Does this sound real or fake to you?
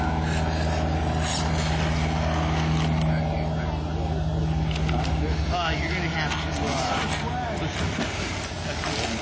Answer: real